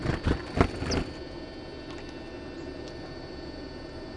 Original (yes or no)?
yes